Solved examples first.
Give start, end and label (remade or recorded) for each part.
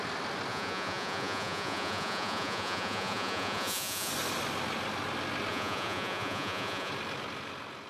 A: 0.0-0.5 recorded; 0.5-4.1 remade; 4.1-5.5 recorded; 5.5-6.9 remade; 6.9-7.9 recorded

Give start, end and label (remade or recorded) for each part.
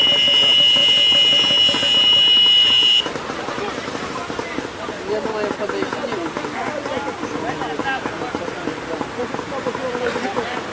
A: 0.0-10.7 recorded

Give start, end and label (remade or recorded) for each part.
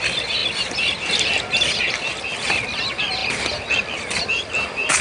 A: 0.0-5.0 recorded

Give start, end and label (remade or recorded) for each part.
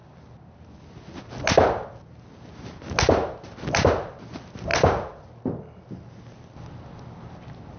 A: 0.0-7.8 recorded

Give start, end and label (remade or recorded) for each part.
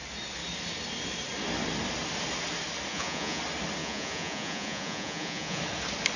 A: 0.0-2.9 recorded; 2.9-3.4 remade; 3.4-3.8 recorded; 3.8-5.6 remade; 5.6-6.2 recorded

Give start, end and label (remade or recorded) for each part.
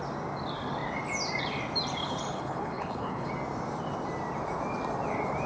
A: 0.0-2.0 recorded; 2.0-3.3 remade; 3.3-5.5 recorded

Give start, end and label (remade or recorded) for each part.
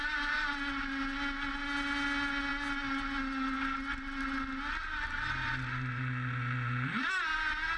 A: 0.0-7.8 recorded